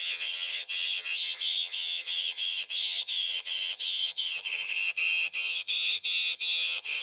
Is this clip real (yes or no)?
no